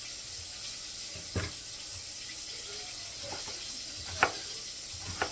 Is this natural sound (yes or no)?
yes